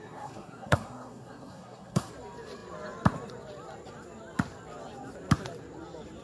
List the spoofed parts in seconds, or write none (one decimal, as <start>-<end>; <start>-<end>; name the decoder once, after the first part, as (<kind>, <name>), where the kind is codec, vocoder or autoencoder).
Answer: 0.0-2.1 (codec, SNAC)